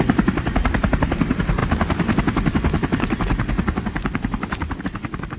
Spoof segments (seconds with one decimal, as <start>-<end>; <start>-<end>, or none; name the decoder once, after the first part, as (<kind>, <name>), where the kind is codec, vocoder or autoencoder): 0.0-5.4 (vocoder, BigVGAN v2)